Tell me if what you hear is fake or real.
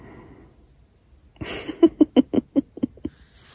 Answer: real